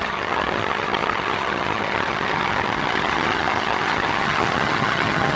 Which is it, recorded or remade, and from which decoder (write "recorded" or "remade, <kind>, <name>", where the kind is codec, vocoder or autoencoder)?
remade, vocoder, HiFi-GAN